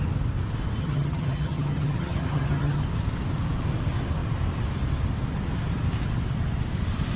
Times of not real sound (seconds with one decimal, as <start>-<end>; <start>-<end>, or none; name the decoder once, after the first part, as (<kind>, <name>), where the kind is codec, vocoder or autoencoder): 0.8-2.8 (vocoder, HiFi-GAN)